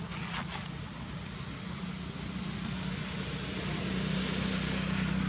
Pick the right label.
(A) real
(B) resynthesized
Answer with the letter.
A